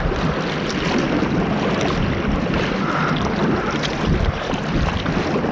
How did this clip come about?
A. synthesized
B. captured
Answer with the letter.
B